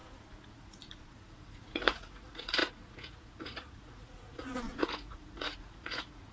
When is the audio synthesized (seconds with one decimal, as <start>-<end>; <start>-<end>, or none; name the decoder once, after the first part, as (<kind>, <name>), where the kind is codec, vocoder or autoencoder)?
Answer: 0.5-6.3 (vocoder, Vocos)